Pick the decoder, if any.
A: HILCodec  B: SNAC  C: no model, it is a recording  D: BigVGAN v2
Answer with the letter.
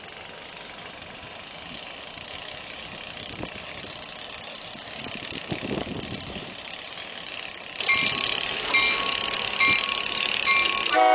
C